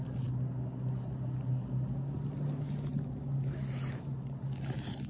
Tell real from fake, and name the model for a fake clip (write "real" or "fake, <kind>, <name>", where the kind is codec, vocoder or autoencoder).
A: real